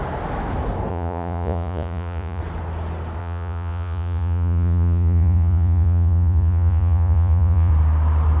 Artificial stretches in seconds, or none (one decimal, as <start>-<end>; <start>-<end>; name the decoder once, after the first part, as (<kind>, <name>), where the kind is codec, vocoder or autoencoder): 0.9-2.4 (vocoder, Vocos); 3.2-7.7